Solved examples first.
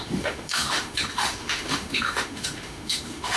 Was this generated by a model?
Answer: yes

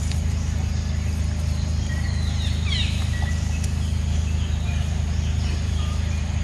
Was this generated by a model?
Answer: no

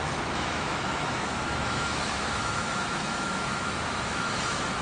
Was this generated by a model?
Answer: yes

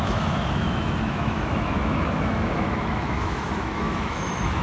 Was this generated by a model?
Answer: yes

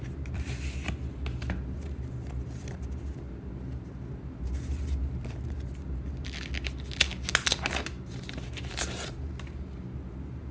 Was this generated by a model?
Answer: no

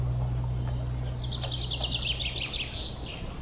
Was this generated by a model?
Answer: no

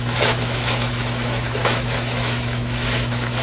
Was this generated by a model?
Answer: yes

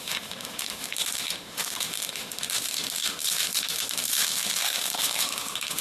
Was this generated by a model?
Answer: yes